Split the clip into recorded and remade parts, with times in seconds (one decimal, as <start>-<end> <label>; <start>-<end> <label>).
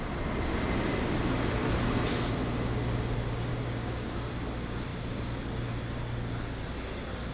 0.0-3.5 recorded; 3.5-4.1 remade; 4.1-7.3 recorded